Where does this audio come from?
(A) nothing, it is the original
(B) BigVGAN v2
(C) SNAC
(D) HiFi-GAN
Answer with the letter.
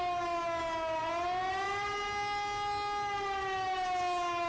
A